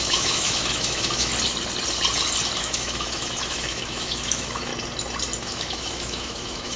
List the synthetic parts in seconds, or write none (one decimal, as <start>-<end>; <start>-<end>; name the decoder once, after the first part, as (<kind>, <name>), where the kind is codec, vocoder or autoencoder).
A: 0.0-1.3 (autoencoder, DAC-VAE); 2.6-4.7; 5.4-6.8

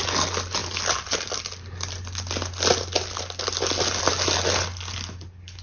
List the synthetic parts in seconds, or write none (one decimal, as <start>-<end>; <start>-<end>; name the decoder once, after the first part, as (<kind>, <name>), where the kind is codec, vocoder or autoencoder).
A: none

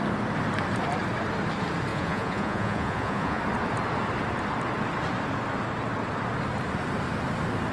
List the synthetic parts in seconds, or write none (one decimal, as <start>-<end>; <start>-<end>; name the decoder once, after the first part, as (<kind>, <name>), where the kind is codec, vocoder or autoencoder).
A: 1.9-3.4 (vocoder, Vocos)